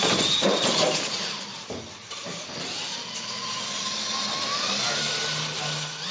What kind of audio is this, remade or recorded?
recorded